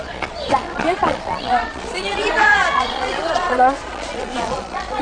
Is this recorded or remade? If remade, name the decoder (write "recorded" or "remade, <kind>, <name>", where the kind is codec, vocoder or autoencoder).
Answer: remade, vocoder, Vocos